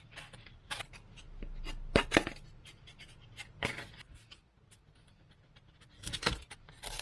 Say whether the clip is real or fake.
real